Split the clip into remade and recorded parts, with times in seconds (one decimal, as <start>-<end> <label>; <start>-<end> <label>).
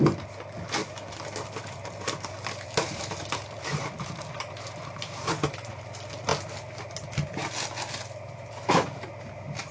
0.0-0.8 recorded; 0.8-5.8 remade; 5.8-9.7 recorded